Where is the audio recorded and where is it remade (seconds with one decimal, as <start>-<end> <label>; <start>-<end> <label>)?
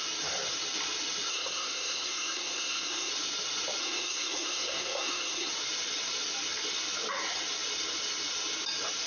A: 0.0-1.3 recorded; 1.3-3.1 remade; 3.1-3.8 recorded; 3.8-5.5 remade; 5.5-9.1 recorded